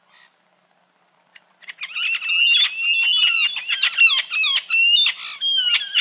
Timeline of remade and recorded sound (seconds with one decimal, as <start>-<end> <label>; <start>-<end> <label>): 0.0-1.3 recorded; 1.3-2.3 remade; 2.3-6.0 recorded